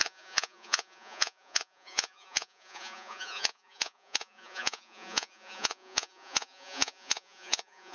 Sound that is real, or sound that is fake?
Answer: fake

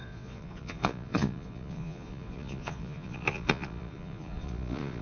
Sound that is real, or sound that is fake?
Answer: fake